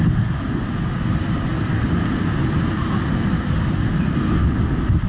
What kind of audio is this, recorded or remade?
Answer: recorded